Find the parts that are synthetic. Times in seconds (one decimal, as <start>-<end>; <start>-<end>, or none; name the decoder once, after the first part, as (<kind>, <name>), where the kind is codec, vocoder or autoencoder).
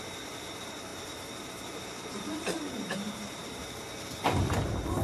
0.9-3.9 (vocoder, BigVGAN v2)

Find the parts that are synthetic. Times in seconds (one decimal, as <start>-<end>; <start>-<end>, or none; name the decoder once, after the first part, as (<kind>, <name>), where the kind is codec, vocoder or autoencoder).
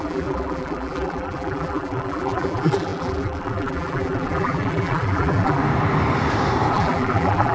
0.0-5.6 (vocoder, BigVGAN v2); 6.7-7.5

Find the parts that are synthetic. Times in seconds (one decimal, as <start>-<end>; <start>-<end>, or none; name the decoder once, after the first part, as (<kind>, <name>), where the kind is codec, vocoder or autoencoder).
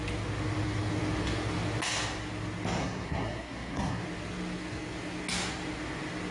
2.8-4.0 (codec, SNAC)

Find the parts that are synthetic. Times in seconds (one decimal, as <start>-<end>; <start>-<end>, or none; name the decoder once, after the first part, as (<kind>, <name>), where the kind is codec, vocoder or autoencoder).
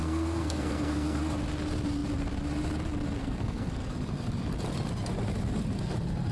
0.0-1.2 (codec, SNAC); 3.2-3.9